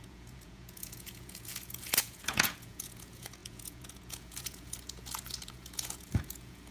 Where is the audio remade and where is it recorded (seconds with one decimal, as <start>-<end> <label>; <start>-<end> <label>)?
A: 0.0-6.7 remade